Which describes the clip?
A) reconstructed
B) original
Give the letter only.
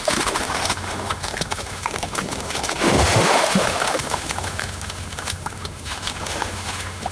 A